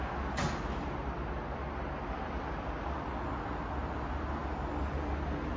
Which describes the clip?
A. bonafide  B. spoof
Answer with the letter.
A